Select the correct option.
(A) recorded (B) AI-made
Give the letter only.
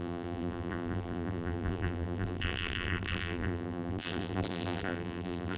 B